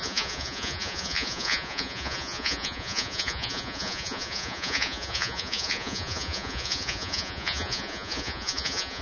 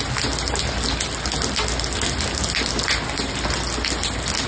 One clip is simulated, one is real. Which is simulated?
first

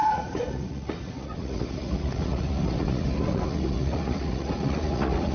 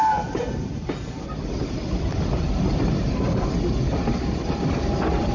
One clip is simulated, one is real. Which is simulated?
first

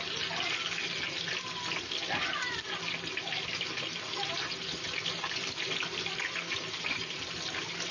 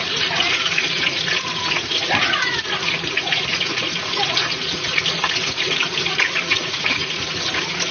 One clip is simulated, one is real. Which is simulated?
second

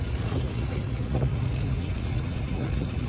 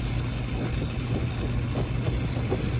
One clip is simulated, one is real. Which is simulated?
first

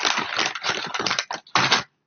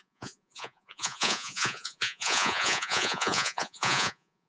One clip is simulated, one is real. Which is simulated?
second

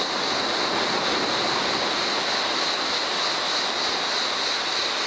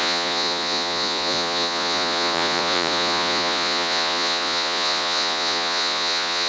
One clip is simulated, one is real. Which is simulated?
second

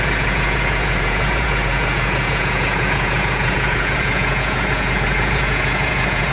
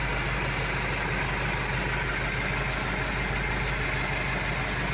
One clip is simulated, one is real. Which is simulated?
first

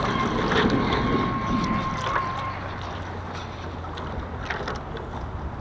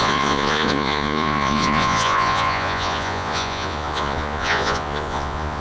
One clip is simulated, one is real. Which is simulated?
second